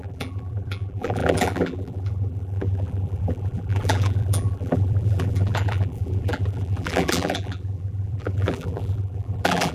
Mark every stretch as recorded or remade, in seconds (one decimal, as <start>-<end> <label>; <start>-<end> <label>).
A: 0.0-9.7 remade

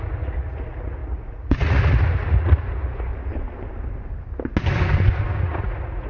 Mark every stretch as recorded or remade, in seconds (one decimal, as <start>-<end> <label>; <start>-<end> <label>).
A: 0.0-3.1 remade; 3.1-5.4 recorded; 5.4-6.1 remade